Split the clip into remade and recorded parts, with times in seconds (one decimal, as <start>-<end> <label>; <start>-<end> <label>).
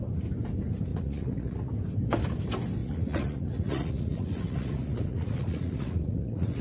0.0-0.9 recorded; 0.9-1.7 remade; 1.7-2.8 recorded; 2.8-6.6 remade